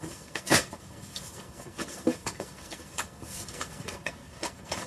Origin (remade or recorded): remade